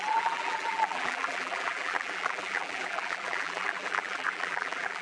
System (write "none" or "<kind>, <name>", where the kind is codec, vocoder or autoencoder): vocoder, BigVGAN v2